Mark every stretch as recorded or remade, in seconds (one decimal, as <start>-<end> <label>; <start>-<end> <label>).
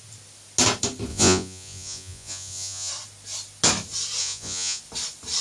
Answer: 0.0-1.1 recorded; 1.1-2.9 remade; 2.9-4.2 recorded; 4.2-4.8 remade; 4.8-5.4 recorded